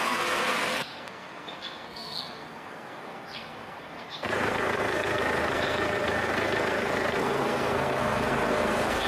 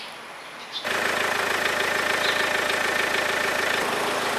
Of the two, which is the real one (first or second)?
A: second